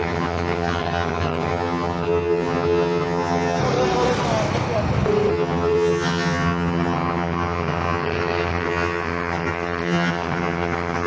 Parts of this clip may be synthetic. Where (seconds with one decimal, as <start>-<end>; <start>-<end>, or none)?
0.0-3.6; 5.3-11.1